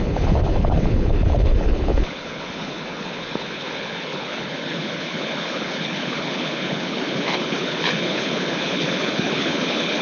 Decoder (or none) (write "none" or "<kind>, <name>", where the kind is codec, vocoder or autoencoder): codec, HILCodec